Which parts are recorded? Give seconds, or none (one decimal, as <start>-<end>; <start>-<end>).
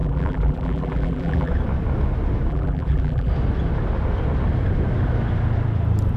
1.5-2.5; 3.3-6.2